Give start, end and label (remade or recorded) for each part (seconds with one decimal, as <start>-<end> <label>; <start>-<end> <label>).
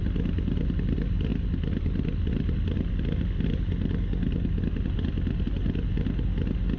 0.0-6.8 recorded